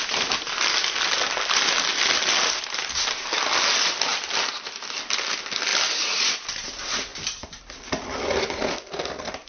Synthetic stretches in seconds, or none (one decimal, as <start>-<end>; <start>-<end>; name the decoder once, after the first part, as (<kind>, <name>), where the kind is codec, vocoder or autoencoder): 4.1-5.3 (vocoder, BigVGAN v2); 5.7-6.3; 7.1-7.6